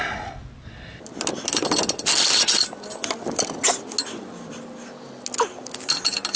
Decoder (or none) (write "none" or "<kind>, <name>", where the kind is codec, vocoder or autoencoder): none